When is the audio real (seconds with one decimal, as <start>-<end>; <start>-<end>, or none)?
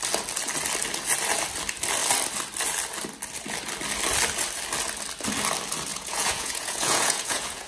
0.0-5.9